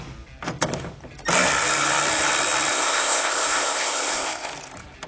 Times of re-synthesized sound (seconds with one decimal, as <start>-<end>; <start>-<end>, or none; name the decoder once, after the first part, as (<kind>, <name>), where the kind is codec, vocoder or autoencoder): 2.7-4.5 (codec, ZipCodec)